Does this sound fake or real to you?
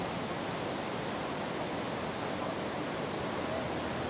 real